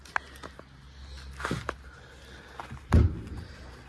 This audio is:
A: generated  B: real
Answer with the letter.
B